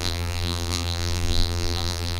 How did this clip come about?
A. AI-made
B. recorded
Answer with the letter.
A